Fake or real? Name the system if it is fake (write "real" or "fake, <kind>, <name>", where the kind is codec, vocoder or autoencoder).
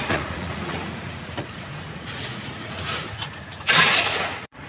fake, vocoder, Vocos